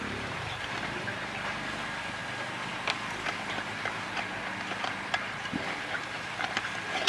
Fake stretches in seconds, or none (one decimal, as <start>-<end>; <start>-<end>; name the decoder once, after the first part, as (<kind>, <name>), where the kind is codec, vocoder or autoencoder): 0.0-2.2 (vocoder, BigVGAN v2); 5.8-7.1

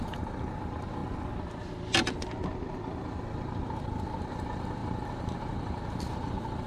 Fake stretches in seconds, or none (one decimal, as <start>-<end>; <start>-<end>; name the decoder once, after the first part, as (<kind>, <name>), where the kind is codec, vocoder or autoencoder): 0.0-1.0 (vocoder, BigVGAN v2); 4.2-6.7